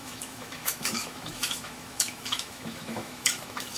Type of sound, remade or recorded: remade